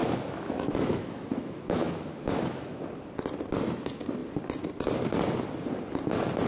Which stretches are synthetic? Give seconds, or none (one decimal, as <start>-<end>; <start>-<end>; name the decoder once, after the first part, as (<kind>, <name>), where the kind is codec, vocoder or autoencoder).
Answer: 0.0-2.8 (autoencoder, DAC-VAE)